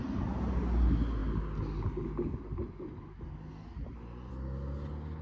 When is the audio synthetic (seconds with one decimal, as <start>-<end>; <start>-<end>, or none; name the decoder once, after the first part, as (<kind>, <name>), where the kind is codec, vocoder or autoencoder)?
none